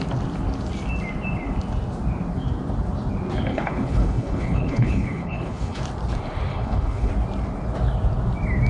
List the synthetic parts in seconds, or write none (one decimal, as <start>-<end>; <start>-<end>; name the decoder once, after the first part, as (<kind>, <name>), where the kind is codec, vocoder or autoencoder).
3.5-5.8 (codec, HILCodec); 6.5-7.1